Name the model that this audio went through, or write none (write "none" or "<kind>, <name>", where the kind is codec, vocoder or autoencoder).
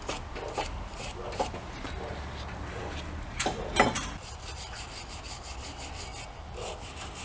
none